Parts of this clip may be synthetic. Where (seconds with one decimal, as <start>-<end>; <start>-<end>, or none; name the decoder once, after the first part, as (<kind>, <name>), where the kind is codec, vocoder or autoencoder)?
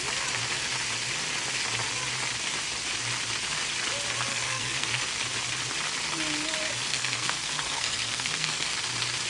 4.3-5.0 (codec, SNAC); 6.9-8.7